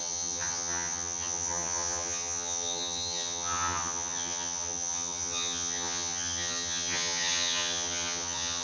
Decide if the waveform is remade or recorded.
remade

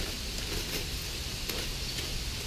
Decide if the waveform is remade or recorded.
recorded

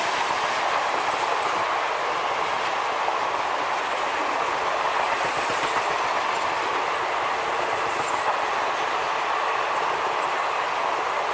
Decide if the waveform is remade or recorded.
recorded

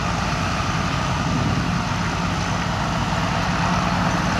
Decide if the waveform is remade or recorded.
recorded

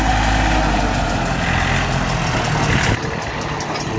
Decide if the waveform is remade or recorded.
recorded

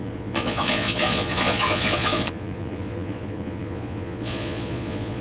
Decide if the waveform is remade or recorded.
remade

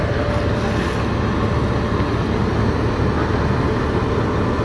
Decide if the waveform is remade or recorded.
recorded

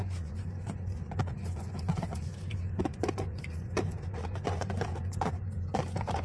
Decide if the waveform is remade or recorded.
remade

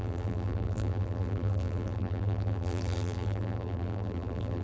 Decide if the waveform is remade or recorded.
remade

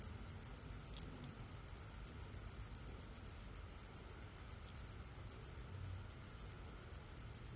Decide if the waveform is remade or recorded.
recorded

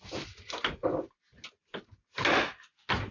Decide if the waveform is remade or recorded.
recorded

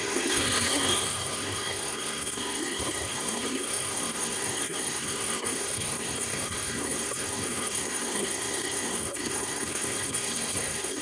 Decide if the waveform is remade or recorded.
remade